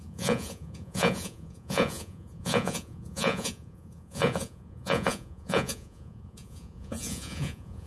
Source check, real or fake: fake